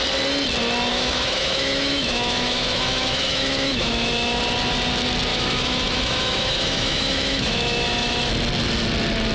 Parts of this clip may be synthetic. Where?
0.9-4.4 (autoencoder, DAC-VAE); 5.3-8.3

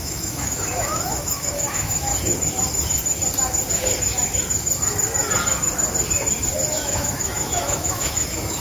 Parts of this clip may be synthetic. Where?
0.0-2.1 (autoencoder, DAC-VAE); 6.7-8.6

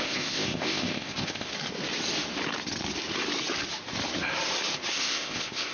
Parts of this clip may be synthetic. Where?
0.0-1.5 (codec, ZipCodec); 4.9-5.7

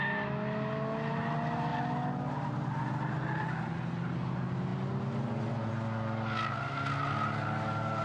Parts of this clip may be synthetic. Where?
none

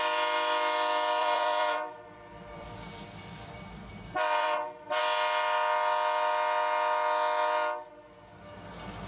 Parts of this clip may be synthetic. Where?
1.2-5.0 (vocoder, BigVGAN v2)